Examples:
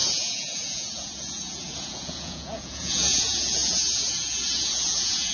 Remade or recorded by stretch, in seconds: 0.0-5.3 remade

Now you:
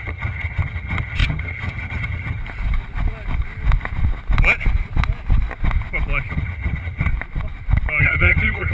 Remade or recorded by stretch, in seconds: 0.0-2.4 remade; 2.4-6.3 recorded; 6.3-7.1 remade; 7.1-8.0 recorded; 8.0-8.7 remade

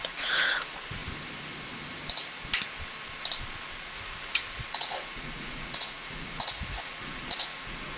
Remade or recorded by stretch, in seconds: 0.0-1.0 remade; 1.0-3.8 recorded; 3.8-8.0 remade

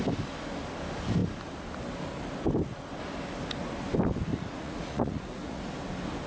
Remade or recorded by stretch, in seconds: 0.0-4.3 recorded; 4.3-5.6 remade; 5.6-6.3 recorded

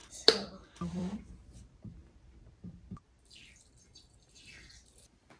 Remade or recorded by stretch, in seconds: 0.0-1.3 remade; 1.3-5.4 recorded

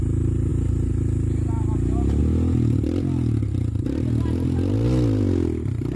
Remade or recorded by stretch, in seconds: 0.0-6.0 recorded

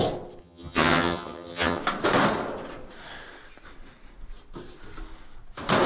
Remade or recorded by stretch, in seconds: 0.0-0.4 recorded; 0.4-1.8 remade; 1.8-5.9 recorded

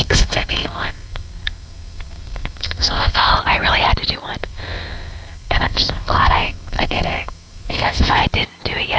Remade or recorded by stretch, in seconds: 0.0-3.3 remade; 3.3-4.4 recorded; 4.4-8.2 remade; 8.2-9.0 recorded